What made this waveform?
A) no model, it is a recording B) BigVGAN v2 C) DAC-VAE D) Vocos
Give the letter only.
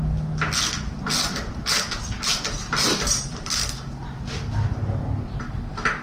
A